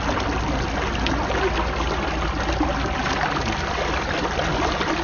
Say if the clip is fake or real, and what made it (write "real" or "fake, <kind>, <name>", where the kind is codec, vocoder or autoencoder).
real